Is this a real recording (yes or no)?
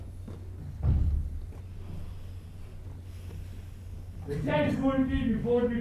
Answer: yes